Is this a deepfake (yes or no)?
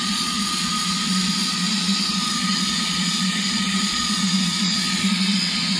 yes